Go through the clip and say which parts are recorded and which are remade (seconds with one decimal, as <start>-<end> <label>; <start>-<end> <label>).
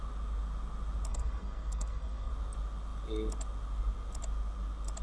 0.0-1.1 recorded; 1.1-2.3 remade; 2.3-5.0 recorded